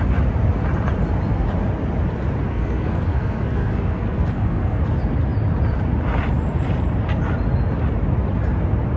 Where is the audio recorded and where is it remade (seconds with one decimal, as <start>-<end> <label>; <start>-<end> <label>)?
0.0-2.5 recorded; 2.5-4.8 remade; 4.8-9.0 recorded